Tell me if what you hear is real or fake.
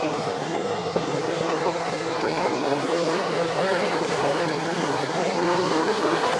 fake